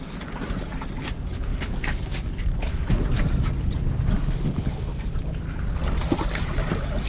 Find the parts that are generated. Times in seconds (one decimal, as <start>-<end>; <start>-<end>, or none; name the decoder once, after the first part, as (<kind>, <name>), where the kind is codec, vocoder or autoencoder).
1.5-2.6 (codec, DAC)